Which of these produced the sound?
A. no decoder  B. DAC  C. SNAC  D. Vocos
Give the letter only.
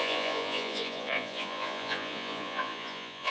D